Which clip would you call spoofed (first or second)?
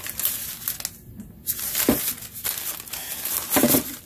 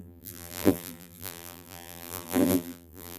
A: second